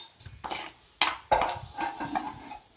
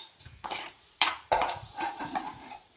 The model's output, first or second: second